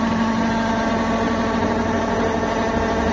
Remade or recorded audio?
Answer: recorded